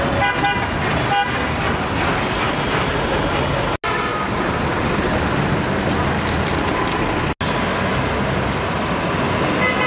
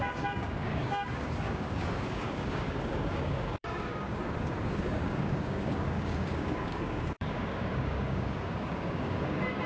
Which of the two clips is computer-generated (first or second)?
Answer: second